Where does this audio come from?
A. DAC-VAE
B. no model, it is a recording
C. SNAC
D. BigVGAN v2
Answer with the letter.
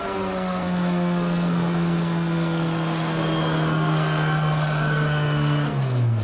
C